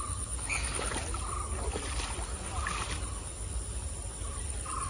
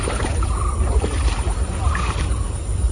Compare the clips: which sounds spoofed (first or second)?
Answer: second